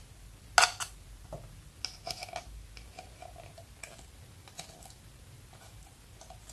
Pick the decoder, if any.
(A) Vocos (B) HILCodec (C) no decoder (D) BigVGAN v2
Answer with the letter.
C